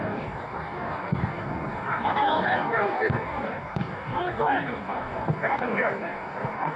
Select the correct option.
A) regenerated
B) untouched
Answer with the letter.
A